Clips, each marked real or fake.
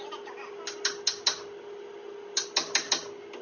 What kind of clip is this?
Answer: real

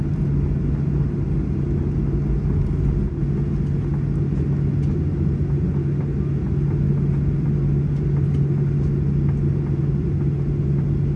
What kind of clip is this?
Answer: real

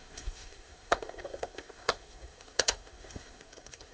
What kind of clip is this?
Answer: fake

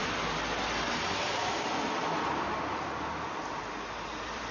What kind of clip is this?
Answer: real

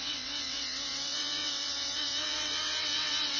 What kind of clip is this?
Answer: fake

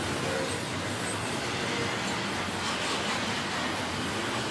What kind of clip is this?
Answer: real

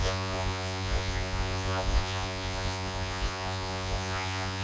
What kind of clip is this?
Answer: fake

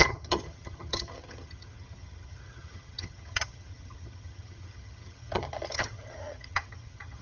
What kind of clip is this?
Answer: fake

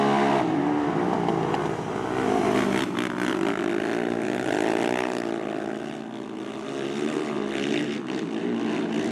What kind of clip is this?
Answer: real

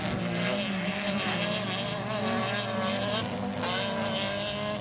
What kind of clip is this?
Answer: real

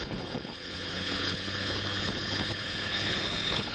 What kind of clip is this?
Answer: fake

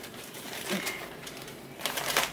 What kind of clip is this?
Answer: fake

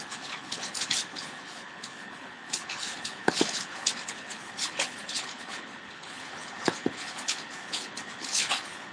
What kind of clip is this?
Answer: fake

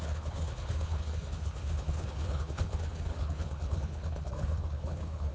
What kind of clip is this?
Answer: fake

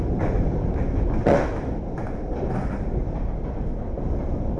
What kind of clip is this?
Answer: real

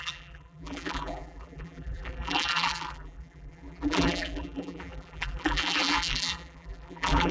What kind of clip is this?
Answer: fake